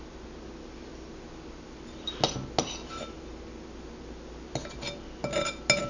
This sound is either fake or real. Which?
real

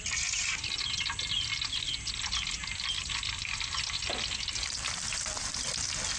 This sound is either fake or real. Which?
real